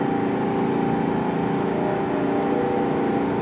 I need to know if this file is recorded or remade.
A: recorded